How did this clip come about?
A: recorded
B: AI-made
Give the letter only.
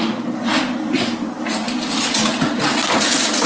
A